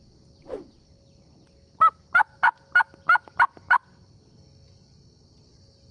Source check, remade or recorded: recorded